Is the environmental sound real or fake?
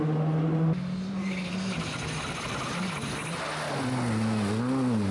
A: real